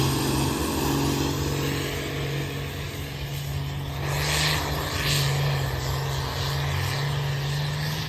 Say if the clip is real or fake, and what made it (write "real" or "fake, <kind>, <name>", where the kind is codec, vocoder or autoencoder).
real